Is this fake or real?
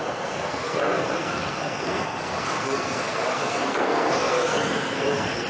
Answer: fake